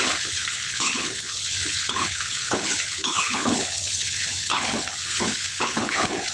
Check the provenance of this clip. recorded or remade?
remade